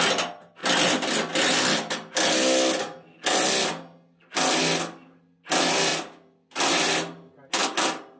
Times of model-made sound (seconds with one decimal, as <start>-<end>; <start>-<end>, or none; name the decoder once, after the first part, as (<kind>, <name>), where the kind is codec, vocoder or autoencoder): none